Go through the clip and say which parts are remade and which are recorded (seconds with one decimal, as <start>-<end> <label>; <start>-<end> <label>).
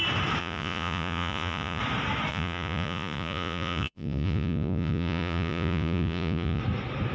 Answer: 0.0-0.4 recorded; 0.4-1.8 remade; 1.8-2.3 recorded; 2.3-6.6 remade; 6.6-7.1 recorded